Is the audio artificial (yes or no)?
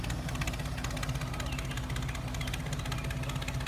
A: no